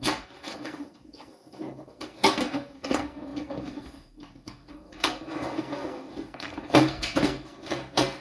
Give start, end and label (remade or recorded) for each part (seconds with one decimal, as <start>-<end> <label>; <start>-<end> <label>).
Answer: 0.0-8.2 remade